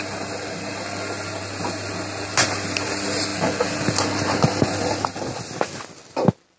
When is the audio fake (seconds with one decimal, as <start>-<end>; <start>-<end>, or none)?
none